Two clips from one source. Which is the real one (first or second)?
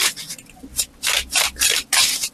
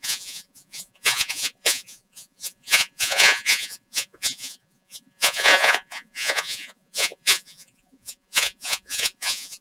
first